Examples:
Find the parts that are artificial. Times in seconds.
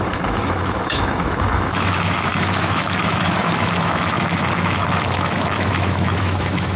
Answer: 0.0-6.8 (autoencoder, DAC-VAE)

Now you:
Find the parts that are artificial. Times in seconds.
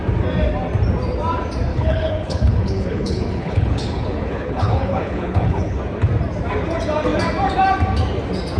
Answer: 1.7-5.8 (codec, HILCodec)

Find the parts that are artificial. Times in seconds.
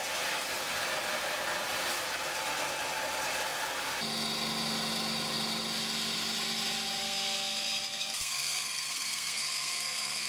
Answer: 7.0-10.3 (codec, SNAC)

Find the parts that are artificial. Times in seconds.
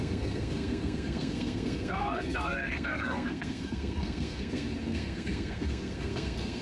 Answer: 0.0-6.6 (codec, SNAC)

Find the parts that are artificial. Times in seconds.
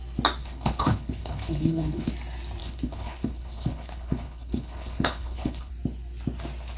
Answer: 0.4-2.1 (codec, HILCodec); 2.6-5.7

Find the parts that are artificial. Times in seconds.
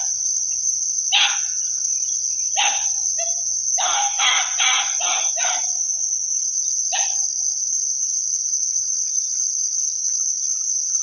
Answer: 0.0-3.3 (vocoder, BigVGAN v2); 4.2-11.0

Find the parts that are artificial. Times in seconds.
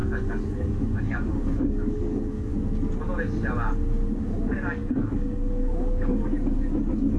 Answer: 0.0-2.5 (codec, DAC); 4.5-7.2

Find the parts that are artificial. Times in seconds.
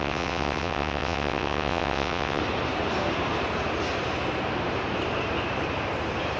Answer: 0.0-2.4 (vocoder, WaveNeXt)